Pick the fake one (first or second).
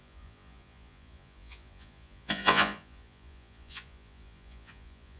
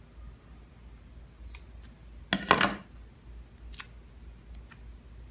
first